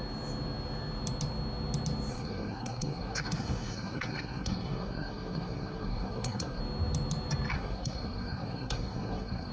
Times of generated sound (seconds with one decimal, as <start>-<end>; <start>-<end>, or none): 2.1-6.6; 7.5-9.5